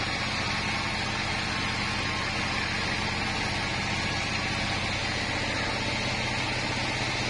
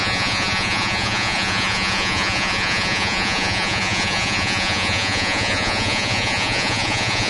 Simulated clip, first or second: second